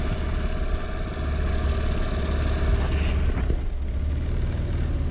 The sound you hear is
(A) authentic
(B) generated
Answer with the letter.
A